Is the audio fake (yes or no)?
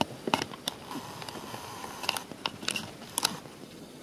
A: no